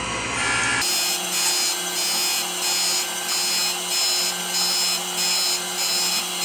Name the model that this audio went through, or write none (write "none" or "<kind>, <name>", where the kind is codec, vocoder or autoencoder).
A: none